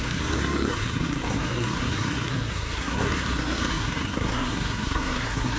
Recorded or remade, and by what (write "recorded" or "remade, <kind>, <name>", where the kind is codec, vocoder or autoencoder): remade, codec, SNAC